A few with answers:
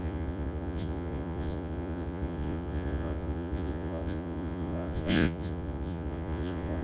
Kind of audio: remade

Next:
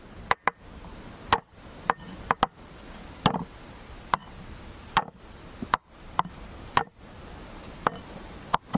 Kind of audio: recorded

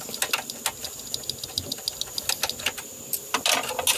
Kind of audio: recorded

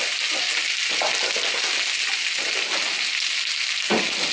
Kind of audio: recorded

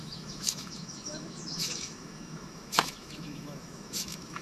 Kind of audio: remade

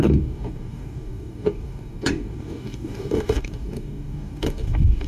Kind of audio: remade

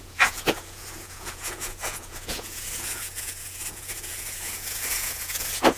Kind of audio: remade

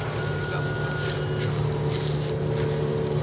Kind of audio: recorded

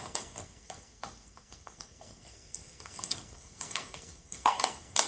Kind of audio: remade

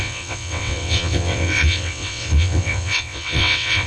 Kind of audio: remade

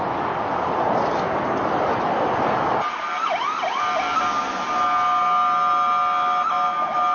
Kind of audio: recorded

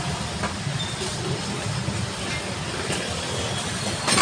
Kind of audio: recorded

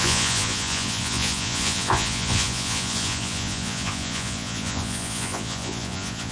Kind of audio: remade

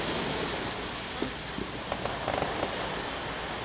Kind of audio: recorded